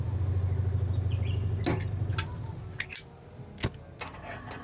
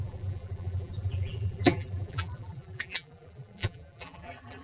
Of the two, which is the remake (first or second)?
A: second